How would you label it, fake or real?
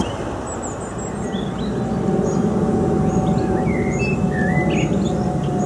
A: real